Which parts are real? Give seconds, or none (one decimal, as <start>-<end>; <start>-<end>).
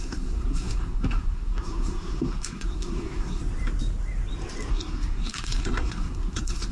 3.4-4.7